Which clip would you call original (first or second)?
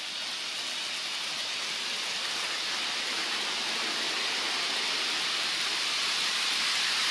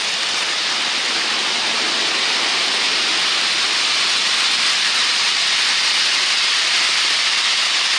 second